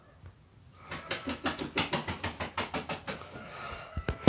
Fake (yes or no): no